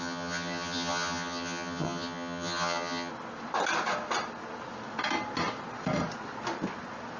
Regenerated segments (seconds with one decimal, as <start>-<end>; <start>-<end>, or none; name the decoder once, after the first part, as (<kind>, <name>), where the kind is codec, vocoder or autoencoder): 0.0-3.1 (vocoder, HiFi-GAN)